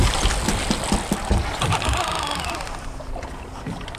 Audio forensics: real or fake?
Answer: real